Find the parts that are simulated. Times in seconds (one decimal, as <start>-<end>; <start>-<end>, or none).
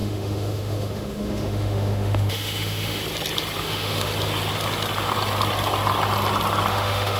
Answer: 0.0-3.0; 3.6-4.1; 6.7-7.2